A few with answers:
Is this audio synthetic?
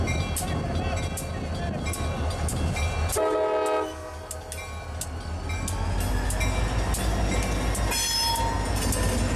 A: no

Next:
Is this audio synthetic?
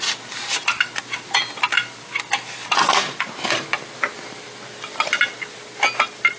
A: no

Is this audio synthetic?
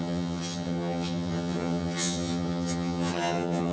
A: yes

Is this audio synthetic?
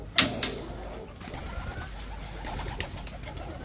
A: no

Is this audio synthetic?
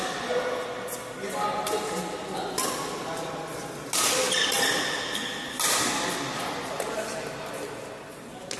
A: no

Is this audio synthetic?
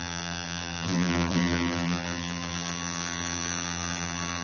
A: yes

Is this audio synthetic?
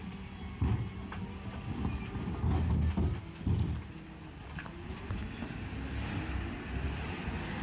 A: no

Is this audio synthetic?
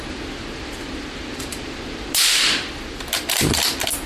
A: no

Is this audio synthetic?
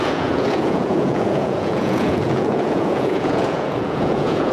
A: yes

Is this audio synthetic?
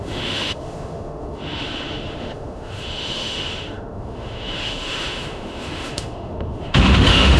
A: yes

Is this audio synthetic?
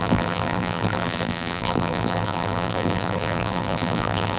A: yes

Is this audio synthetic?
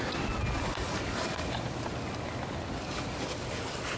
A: no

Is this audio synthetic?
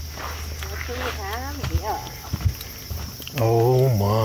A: no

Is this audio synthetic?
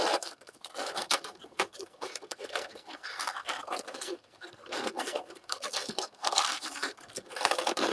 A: yes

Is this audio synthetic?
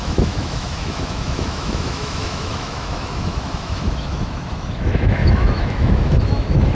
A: yes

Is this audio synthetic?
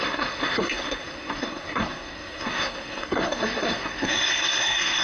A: yes